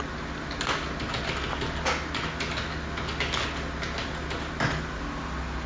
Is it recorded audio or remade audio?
recorded